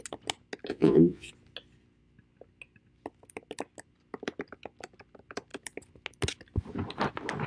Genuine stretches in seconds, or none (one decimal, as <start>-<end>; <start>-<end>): 0.0-0.7; 1.3-7.5